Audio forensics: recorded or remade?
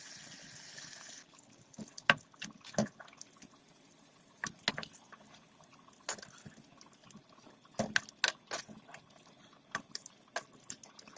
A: recorded